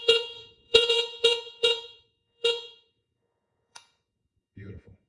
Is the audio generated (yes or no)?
yes